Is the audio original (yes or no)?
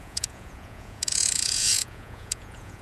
no